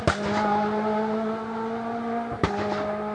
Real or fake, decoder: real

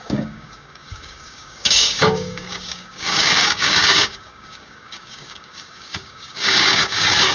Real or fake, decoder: fake, codec, DAC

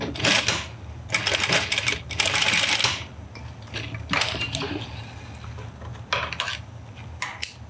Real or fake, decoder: real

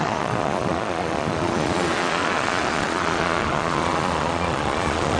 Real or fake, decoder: fake, vocoder, Vocos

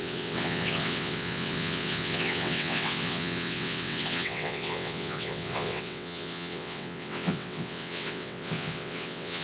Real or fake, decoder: fake, vocoder, WaveNeXt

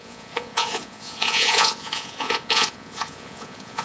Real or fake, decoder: fake, vocoder, Vocos